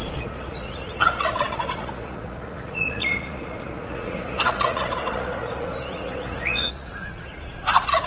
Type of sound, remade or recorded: remade